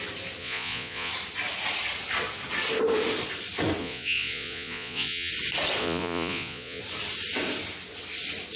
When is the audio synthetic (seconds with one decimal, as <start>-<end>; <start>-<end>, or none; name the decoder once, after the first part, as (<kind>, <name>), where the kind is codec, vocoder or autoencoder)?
0.4-1.1 (vocoder, Vocos); 3.8-5.3; 5.8-6.8